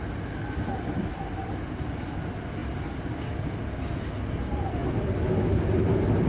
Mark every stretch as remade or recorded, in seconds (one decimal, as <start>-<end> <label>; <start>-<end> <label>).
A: 0.0-6.3 recorded